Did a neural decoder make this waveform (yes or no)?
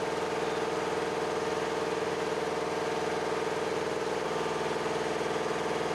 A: no